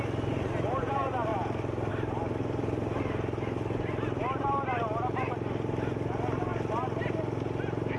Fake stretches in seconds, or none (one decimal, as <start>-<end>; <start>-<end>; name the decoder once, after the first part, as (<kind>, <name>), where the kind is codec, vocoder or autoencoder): none